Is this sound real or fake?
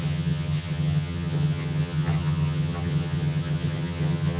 fake